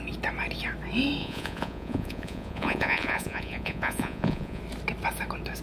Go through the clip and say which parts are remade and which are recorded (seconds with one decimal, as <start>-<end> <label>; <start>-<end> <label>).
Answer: 0.0-1.2 recorded; 1.2-4.6 remade; 4.6-5.6 recorded